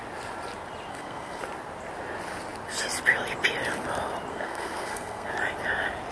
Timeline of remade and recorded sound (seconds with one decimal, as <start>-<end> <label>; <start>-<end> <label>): 0.0-0.9 recorded; 0.9-1.4 remade; 1.4-4.3 recorded; 4.3-5.3 remade; 5.3-6.1 recorded